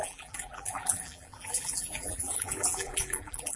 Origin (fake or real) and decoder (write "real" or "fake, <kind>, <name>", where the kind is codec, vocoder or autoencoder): fake, vocoder, BigVGAN v2